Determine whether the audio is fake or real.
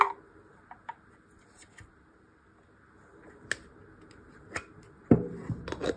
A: real